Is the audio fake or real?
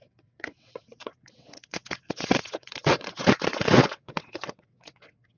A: fake